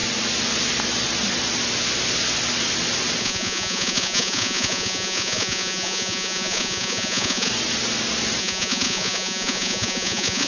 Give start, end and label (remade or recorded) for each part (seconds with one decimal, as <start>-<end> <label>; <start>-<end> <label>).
0.0-3.2 recorded; 3.2-7.5 remade; 7.5-8.4 recorded; 8.4-10.5 remade